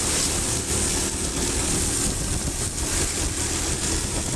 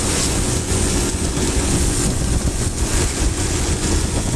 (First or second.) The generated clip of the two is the second